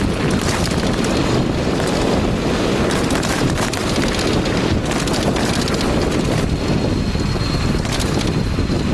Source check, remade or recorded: recorded